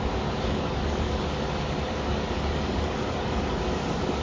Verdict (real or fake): fake